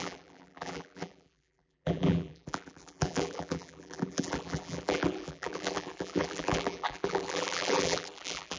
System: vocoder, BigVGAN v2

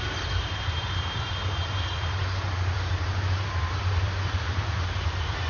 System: vocoder, BigVGAN v2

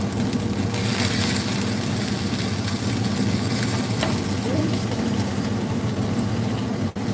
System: none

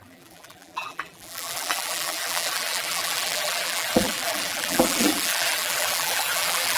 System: vocoder, BigVGAN v2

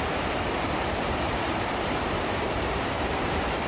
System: vocoder, BigVGAN v2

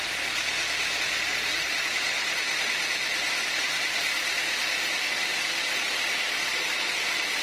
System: none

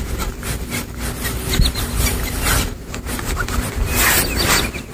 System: none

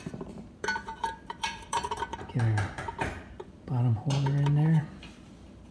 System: vocoder, BigVGAN v2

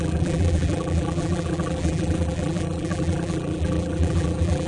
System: vocoder, BigVGAN v2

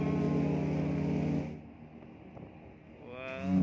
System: none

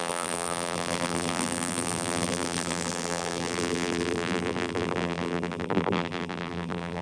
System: vocoder, BigVGAN v2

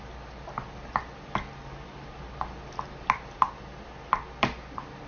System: none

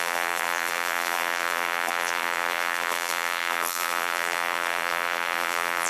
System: vocoder, BigVGAN v2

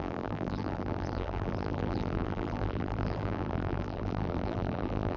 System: vocoder, BigVGAN v2